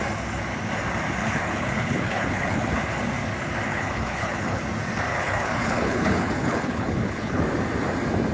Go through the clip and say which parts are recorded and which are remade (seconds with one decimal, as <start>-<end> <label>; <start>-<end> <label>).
0.0-1.2 recorded; 1.2-2.7 remade; 2.7-3.7 recorded; 3.7-4.6 remade; 4.6-5.1 recorded; 5.1-7.4 remade; 7.4-8.3 recorded

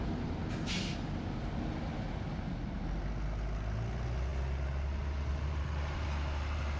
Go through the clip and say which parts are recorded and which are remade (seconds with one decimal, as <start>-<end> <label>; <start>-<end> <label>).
0.0-6.8 recorded

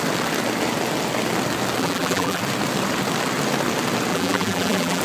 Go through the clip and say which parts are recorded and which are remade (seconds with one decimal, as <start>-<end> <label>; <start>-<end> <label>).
0.0-1.8 recorded; 1.8-2.4 remade; 2.4-4.1 recorded; 4.1-5.0 remade

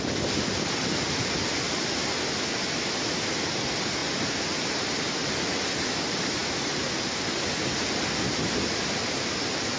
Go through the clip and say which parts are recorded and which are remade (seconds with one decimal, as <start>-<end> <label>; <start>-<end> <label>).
0.0-9.8 recorded

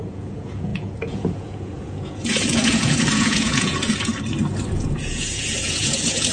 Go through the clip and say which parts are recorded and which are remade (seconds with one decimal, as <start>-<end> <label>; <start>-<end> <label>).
0.0-4.1 remade; 4.1-4.7 recorded; 4.7-6.3 remade